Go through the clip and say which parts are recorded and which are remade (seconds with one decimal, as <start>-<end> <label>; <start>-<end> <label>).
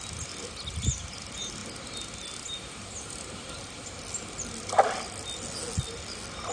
0.0-6.5 recorded